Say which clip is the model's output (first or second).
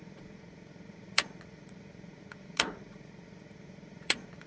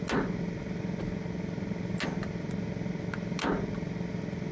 first